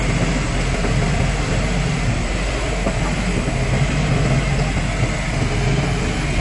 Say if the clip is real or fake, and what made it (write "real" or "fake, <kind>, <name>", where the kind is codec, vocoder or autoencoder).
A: real